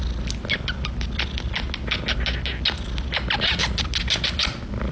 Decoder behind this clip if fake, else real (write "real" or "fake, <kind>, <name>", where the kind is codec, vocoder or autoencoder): real